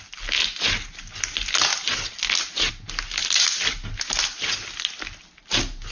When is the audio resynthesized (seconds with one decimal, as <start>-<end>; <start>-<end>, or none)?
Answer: none